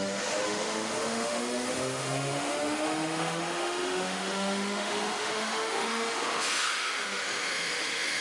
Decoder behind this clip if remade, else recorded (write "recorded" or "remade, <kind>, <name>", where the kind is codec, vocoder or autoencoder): remade, autoencoder, DAC-VAE